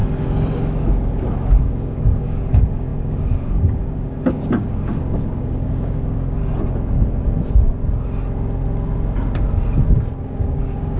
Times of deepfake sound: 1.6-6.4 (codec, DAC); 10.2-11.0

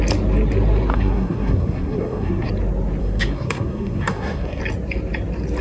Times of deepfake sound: 0.9-2.5 (codec, SNAC); 3.0-4.6

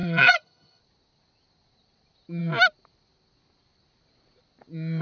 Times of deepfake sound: 0.0-0.8 (vocoder, HiFi-GAN)

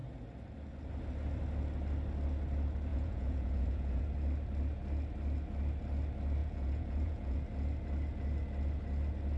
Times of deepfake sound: 2.9-4.0 (vocoder, Vocos); 6.4-7.4

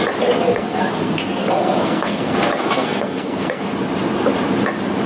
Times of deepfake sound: 0.5-3.6 (codec, SNAC)

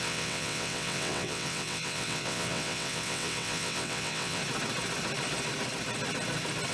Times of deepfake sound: 0.0-4.4 (vocoder, WaveNeXt)

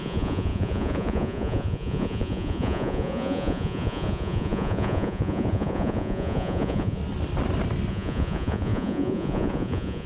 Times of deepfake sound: 0.0-7.0 (vocoder, Vocos); 7.9-10.1